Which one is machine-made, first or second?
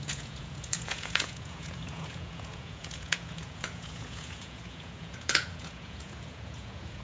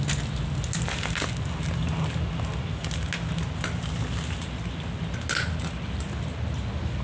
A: first